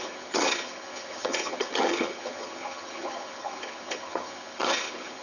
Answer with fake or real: fake